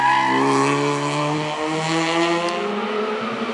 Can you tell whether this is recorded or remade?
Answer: recorded